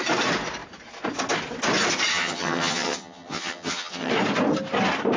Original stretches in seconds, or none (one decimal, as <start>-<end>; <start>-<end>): 0.0-2.1; 4.1-5.2